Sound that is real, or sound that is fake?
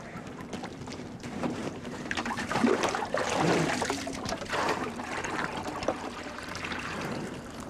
fake